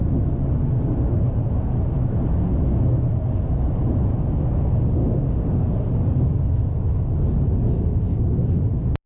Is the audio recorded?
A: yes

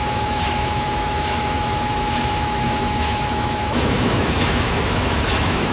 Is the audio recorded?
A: no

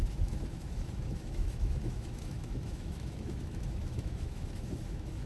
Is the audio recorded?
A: no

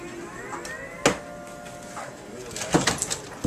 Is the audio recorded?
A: yes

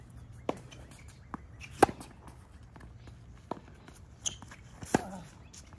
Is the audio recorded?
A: yes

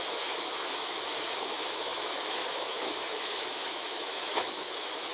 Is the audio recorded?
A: no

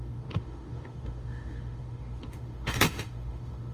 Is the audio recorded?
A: no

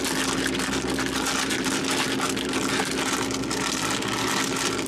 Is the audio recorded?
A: yes